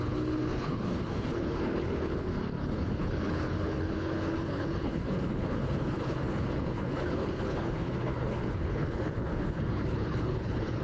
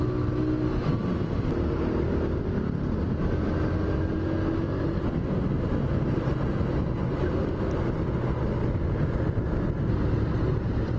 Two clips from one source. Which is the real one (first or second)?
second